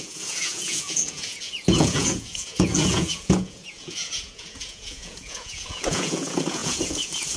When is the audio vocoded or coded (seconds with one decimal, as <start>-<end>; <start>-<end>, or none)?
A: 0.0-7.4